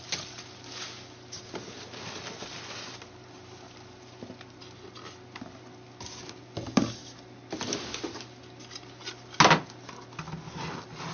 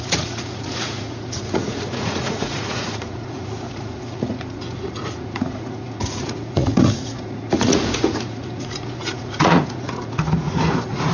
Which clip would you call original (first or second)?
first